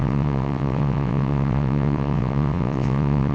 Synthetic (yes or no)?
yes